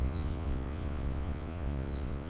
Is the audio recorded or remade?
remade